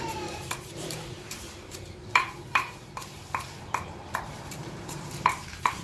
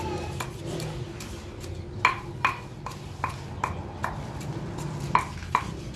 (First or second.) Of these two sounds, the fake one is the first